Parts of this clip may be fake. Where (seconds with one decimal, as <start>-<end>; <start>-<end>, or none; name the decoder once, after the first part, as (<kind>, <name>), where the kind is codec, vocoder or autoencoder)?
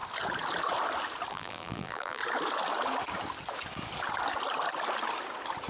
1.3-2.2 (vocoder, BigVGAN v2)